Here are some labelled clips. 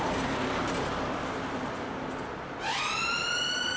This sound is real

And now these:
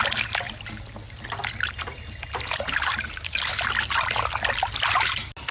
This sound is real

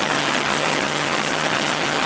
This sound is fake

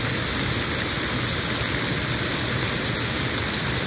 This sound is real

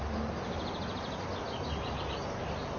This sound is real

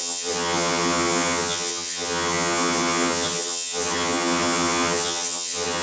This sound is fake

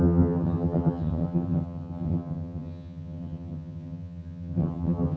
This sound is fake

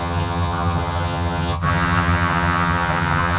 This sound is fake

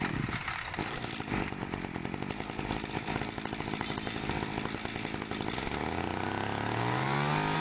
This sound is real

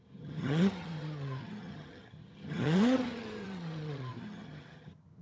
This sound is fake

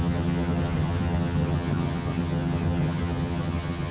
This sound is fake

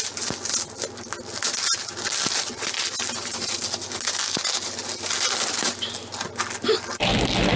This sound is real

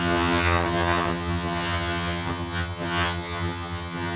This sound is fake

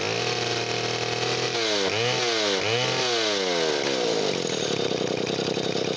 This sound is real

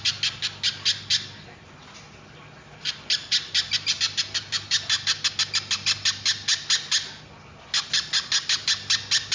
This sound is real